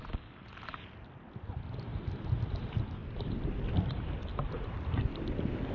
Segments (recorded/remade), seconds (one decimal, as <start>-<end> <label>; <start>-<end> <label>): 0.0-3.0 recorded; 3.0-5.0 remade; 5.0-5.7 recorded